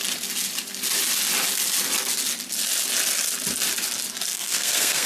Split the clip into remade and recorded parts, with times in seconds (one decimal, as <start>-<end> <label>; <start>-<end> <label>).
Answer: 0.0-4.3 recorded; 4.3-5.1 remade